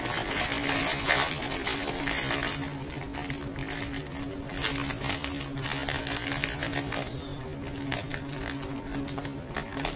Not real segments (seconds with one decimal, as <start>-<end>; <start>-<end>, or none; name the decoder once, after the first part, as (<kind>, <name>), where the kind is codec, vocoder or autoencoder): none

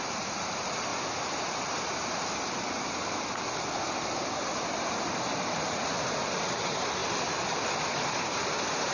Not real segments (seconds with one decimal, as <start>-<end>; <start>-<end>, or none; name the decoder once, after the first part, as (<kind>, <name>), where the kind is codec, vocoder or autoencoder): 0.0-0.9 (vocoder, BigVGAN v2); 4.9-7.0; 7.9-8.9

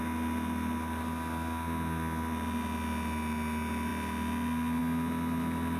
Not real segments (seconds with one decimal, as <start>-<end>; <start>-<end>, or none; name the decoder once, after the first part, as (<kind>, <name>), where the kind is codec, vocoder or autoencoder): none

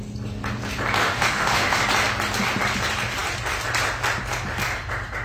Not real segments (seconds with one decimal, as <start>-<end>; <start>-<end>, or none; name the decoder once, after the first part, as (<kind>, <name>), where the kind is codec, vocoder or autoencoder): 1.0-1.8 (autoencoder, DAC-VAE)

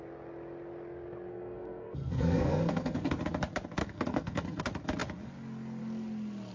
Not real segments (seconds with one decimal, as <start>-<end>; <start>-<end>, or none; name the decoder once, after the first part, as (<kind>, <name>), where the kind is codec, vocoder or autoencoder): 1.3-3.1 (codec, SNAC); 3.8-4.6

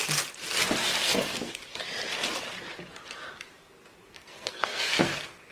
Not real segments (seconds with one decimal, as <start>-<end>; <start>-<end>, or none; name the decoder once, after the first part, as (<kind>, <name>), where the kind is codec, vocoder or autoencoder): 0.8-1.5 (codec, SNAC); 4.0-5.5

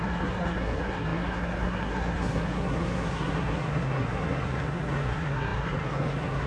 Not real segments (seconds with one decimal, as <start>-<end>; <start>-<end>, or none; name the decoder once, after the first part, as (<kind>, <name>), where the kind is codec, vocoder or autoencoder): 0.0-6.5 (codec, SNAC)

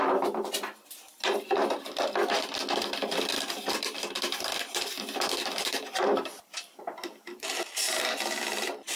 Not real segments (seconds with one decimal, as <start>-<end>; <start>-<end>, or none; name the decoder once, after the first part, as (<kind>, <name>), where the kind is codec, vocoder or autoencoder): 0.0-1.1 (vocoder, BigVGAN v2); 1.8-2.2; 3.3-9.0